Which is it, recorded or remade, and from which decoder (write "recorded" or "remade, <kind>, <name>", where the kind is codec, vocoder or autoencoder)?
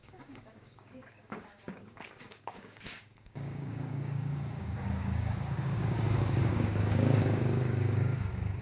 remade, codec, DAC